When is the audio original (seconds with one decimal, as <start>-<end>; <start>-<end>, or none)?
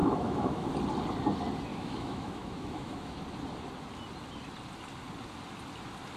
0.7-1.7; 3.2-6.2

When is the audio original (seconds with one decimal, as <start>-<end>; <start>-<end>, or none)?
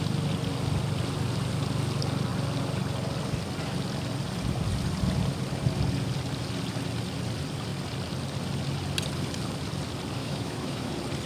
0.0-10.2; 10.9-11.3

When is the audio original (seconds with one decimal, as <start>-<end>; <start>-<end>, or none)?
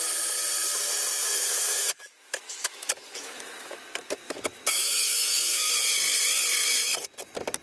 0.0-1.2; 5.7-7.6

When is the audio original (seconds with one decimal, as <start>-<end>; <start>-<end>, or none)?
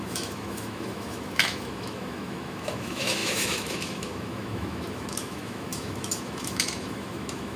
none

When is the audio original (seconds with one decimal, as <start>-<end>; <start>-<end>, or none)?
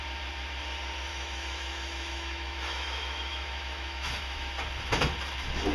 0.0-1.1; 4.5-5.7